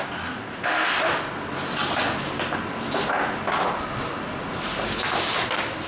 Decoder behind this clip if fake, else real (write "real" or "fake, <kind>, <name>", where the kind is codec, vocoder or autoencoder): real